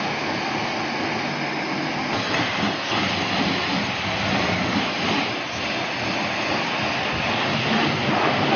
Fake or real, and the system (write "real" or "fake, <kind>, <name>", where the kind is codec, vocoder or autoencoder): real